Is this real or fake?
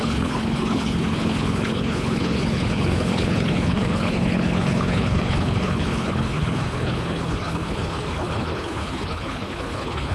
fake